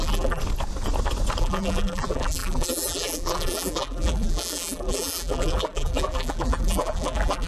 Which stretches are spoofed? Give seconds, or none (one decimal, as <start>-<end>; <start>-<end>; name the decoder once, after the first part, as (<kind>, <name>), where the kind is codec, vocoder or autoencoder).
0.0-0.4 (vocoder, BigVGAN v2); 1.4-7.5